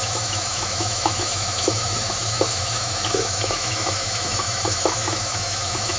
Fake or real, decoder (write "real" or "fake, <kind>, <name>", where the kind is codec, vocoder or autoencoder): fake, autoencoder, DAC-VAE